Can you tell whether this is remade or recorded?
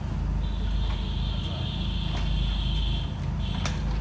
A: recorded